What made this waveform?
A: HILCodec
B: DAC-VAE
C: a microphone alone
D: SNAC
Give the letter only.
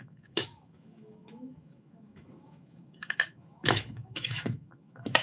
B